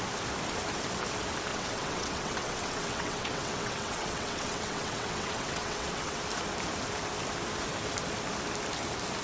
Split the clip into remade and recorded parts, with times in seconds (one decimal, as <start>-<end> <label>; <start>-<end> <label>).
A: 0.0-1.5 recorded; 1.5-6.2 remade; 6.2-9.2 recorded